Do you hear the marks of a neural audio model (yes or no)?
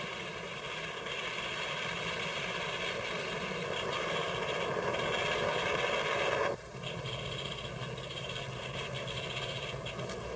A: no